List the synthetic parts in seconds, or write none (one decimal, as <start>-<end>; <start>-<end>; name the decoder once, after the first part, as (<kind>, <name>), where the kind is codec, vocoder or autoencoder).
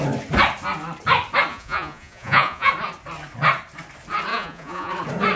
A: 1.5-2.7 (vocoder, Vocos); 4.3-4.9